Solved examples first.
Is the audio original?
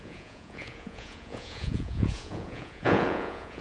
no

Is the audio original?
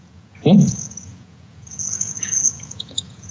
no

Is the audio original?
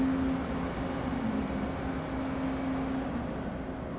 yes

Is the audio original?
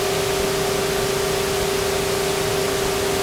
yes